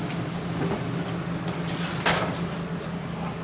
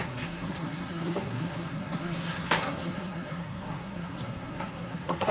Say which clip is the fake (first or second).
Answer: second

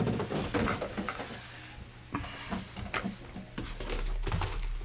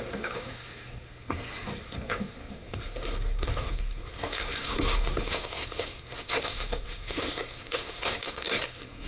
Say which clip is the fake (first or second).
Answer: second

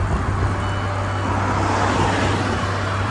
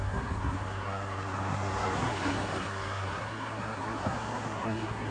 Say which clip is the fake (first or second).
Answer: second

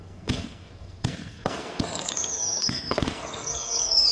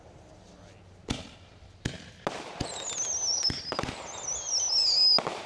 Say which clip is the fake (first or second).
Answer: first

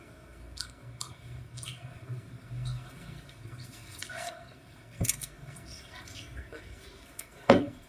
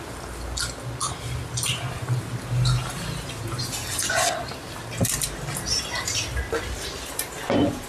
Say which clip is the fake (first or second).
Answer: first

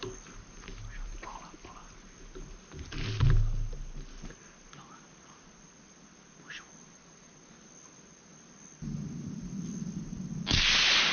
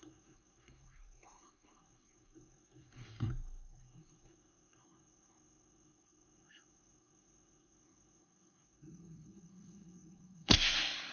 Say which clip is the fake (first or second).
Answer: second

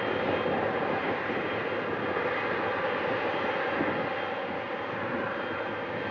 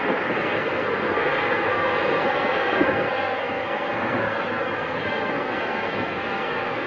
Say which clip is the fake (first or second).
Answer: second